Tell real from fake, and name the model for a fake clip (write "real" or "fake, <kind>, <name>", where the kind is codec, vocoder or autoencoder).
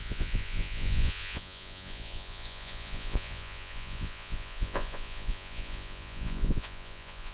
fake, vocoder, Vocos